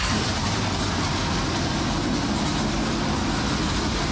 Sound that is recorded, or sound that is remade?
recorded